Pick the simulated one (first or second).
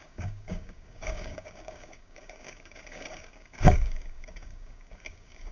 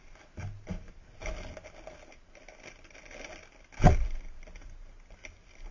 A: first